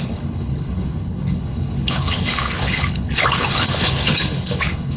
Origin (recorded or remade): remade